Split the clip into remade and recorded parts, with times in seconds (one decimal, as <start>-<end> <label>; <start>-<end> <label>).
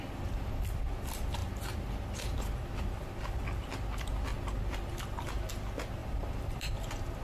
0.0-6.0 recorded; 6.0-6.7 remade; 6.7-7.2 recorded